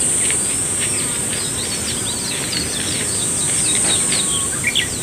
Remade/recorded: recorded